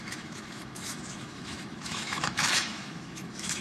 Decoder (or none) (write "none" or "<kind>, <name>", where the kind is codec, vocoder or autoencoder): autoencoder, DAC-VAE